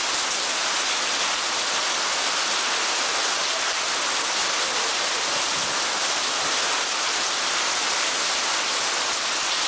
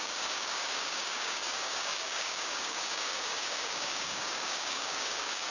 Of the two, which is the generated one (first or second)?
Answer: second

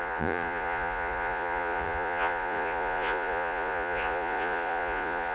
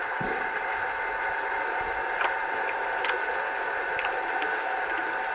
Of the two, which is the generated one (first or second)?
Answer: first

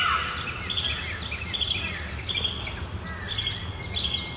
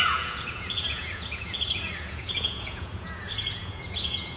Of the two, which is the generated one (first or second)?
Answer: second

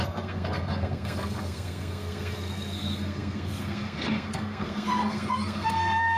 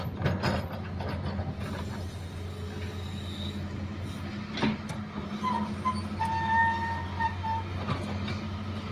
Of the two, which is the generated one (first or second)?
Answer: first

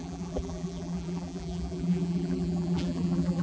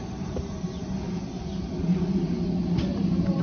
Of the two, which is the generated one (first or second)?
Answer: first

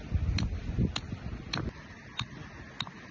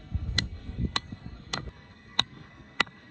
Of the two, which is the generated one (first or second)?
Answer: second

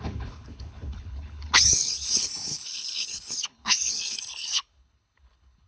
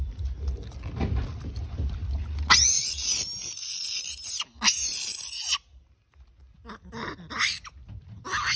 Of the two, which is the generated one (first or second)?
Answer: first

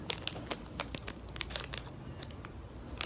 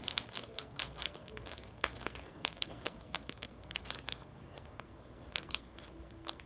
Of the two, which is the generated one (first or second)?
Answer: second